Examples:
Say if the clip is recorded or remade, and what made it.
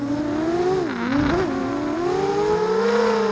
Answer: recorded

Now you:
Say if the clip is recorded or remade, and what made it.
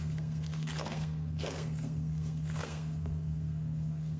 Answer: remade, codec, SNAC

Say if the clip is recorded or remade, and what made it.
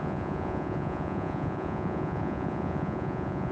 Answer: remade, vocoder, Vocos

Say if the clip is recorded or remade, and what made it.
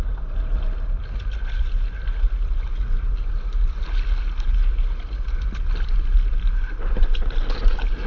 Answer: recorded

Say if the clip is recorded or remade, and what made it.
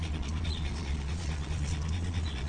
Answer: remade, vocoder, Vocos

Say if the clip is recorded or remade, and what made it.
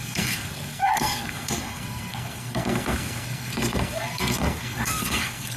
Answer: remade, codec, SNAC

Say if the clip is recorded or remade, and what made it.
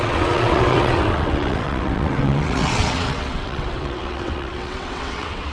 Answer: remade, vocoder, WaveNeXt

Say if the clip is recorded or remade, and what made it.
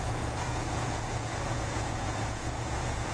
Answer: remade, vocoder, Vocos